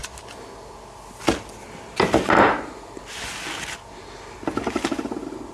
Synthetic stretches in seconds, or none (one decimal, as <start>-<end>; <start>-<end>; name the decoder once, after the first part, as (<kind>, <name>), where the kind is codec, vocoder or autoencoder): none